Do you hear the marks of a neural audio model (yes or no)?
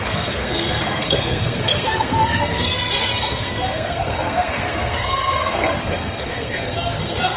yes